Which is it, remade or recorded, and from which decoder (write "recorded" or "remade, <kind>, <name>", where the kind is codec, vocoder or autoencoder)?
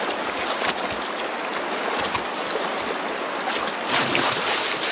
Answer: recorded